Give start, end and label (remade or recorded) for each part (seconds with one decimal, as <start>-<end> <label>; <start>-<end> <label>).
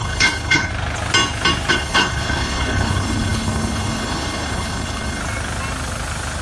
0.0-0.7 remade; 0.7-1.7 recorded; 1.7-5.2 remade; 5.2-6.4 recorded